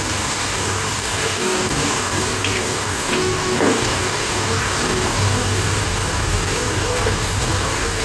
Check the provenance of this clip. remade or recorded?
remade